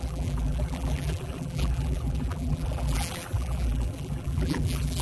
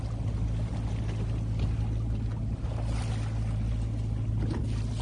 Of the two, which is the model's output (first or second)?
first